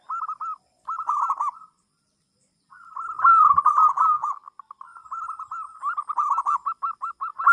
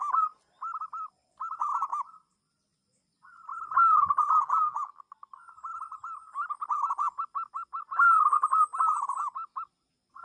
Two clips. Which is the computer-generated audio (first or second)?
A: first